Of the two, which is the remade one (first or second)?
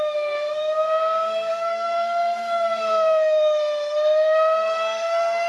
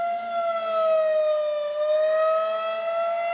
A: first